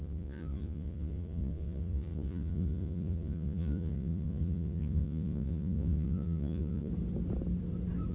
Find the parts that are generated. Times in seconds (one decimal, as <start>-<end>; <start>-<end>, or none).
0.0-6.9